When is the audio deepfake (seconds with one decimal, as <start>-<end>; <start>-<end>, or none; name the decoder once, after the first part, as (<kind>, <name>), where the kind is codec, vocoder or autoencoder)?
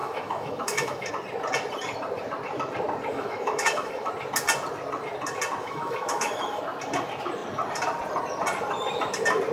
0.0-1.1 (autoencoder, DAC-VAE); 3.1-4.1; 5.6-6.6